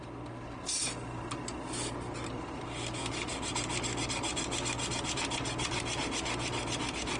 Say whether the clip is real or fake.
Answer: real